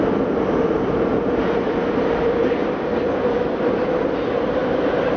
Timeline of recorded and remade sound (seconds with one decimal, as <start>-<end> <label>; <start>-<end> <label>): 0.0-5.2 recorded